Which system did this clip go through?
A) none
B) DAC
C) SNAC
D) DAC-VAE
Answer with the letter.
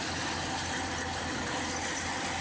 A